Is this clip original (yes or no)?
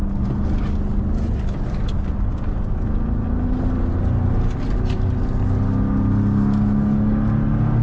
yes